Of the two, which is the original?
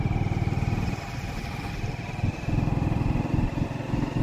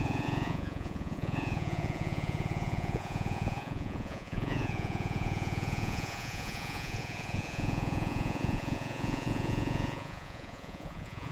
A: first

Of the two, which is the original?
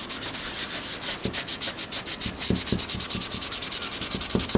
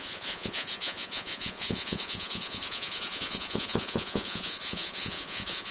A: first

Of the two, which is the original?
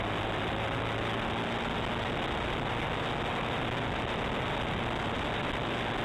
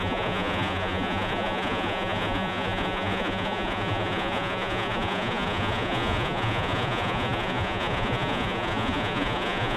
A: first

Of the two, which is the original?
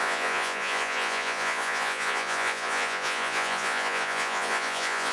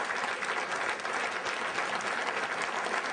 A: second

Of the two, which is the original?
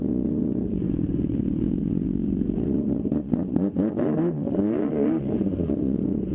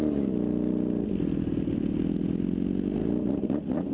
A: second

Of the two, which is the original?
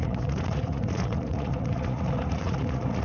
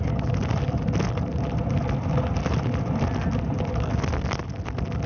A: second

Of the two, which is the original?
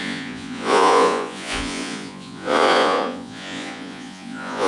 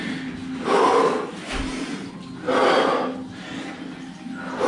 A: second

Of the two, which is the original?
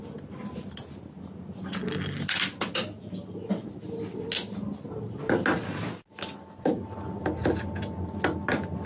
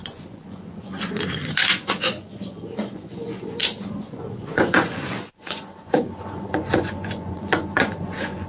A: first